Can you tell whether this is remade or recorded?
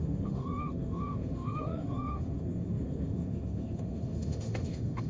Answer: remade